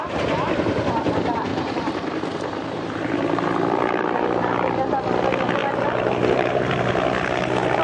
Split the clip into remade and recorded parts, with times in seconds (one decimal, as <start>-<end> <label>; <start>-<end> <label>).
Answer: 0.0-1.5 recorded; 1.5-4.7 remade; 4.7-5.6 recorded; 5.6-6.7 remade; 6.7-7.8 recorded